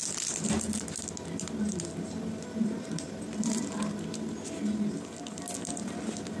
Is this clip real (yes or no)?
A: yes